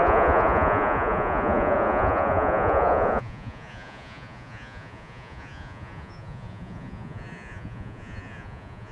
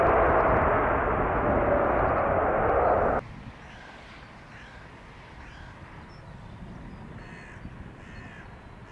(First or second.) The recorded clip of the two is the second